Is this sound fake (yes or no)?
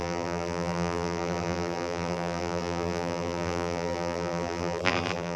yes